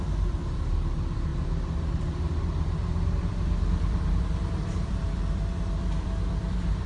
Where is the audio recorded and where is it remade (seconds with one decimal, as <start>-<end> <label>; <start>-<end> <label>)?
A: 0.0-6.9 remade